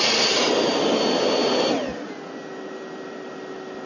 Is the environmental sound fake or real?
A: real